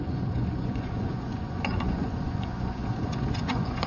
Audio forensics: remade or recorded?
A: remade